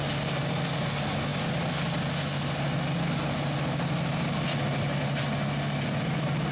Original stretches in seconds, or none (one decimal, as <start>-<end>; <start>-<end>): 0.0-6.5